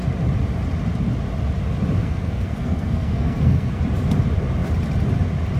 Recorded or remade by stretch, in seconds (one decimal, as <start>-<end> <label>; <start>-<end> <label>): 0.0-2.0 recorded; 2.0-3.8 remade; 3.8-5.6 recorded